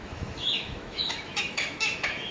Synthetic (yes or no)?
yes